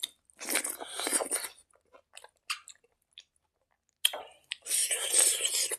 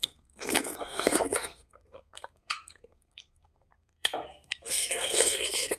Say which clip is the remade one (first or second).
second